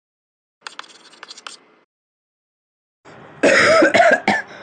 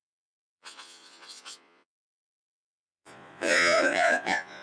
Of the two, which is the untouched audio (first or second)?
first